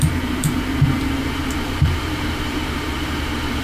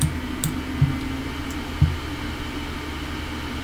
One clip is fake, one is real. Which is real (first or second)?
second